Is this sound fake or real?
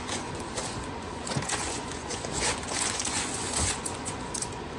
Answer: fake